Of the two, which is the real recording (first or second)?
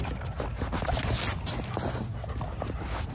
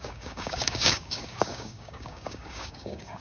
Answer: first